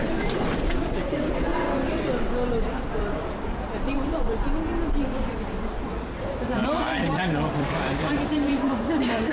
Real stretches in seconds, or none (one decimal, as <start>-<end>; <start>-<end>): 1.5-2.7; 6.6-7.5